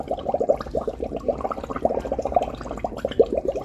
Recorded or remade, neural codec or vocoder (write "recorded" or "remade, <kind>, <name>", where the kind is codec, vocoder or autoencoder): recorded